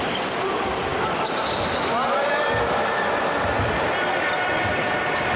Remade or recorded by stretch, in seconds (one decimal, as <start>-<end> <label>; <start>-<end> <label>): 0.0-5.4 recorded